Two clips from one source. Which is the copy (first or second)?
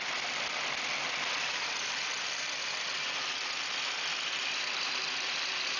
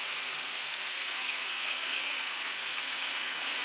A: second